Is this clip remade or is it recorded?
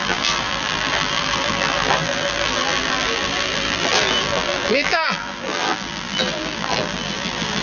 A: remade